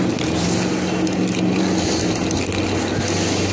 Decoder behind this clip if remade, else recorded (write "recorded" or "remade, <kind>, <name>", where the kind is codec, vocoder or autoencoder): recorded